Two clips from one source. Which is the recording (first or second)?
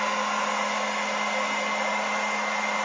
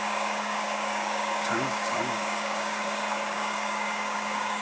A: first